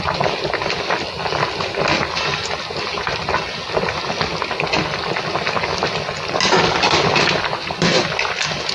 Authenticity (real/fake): real